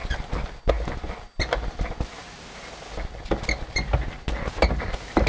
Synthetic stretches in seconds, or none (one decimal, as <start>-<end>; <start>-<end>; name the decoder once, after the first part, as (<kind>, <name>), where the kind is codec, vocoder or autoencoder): none